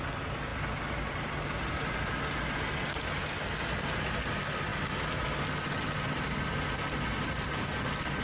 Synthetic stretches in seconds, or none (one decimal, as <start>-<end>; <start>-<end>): none